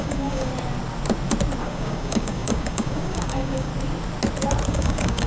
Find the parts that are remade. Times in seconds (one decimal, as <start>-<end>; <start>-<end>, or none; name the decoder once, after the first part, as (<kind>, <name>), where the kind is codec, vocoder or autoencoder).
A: 0.0-0.5 (codec, DAC); 1.6-3.7; 4.7-5.3